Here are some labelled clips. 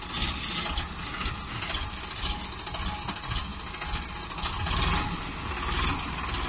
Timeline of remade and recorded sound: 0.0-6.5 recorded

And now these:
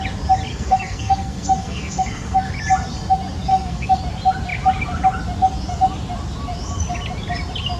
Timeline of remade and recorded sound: 0.0-0.5 recorded; 0.5-2.5 remade; 2.5-3.5 recorded; 3.5-4.0 remade; 4.0-7.8 recorded